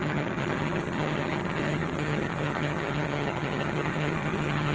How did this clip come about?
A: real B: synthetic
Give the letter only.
B